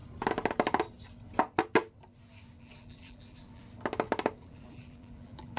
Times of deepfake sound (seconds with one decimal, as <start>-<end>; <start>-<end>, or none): 2.6-3.6; 4.4-5.6